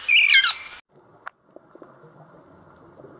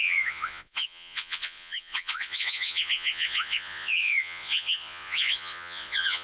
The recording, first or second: first